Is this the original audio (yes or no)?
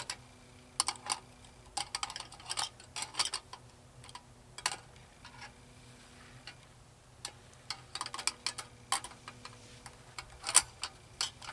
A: yes